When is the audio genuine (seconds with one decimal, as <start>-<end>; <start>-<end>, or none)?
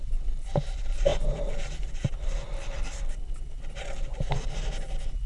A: 0.0-5.3